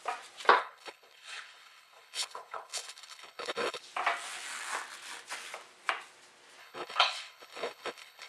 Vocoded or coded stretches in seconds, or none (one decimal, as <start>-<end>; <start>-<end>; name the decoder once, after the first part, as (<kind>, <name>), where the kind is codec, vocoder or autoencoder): 0.6-3.8 (codec, HILCodec); 6.6-8.3

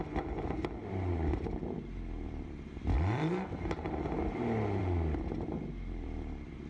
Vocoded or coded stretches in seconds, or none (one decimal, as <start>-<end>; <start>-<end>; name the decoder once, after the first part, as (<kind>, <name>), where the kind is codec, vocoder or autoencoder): 0.8-4.2 (vocoder, BigVGAN v2); 4.8-6.7

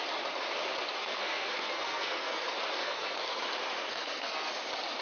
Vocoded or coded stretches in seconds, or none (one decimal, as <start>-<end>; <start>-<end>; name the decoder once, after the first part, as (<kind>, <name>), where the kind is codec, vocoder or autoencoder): 1.0-2.4 (codec, SNAC); 2.8-3.4; 3.9-4.5